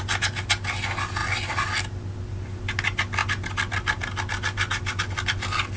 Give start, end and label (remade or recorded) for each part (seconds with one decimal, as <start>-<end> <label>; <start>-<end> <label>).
0.0-5.8 recorded